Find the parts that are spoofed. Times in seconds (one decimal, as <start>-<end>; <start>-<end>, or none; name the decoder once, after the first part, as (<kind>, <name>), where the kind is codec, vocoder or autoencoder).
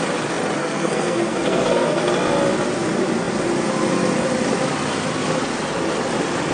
0.6-2.1 (codec, SNAC)